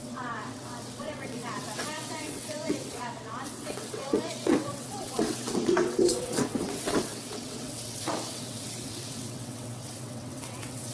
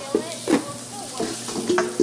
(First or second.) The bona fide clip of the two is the second